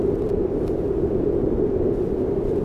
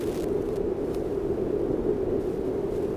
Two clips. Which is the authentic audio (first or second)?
second